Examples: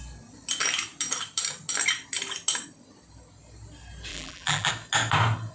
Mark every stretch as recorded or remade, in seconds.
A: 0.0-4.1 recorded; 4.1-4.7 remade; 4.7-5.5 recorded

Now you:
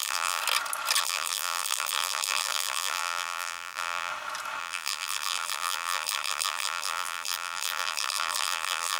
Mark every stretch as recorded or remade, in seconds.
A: 0.0-0.4 remade; 0.4-1.0 recorded; 1.0-4.1 remade; 4.1-4.6 recorded; 4.6-9.0 remade

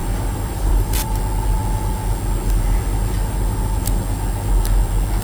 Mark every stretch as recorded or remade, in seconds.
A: 0.0-1.2 remade; 1.2-5.2 recorded

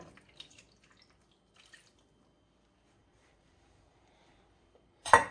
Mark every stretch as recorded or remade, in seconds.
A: 0.0-3.0 recorded; 3.0-5.3 remade